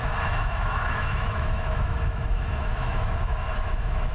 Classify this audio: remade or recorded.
remade